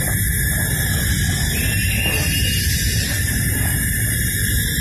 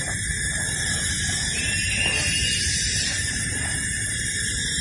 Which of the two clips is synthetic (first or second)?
second